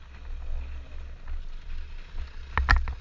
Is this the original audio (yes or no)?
yes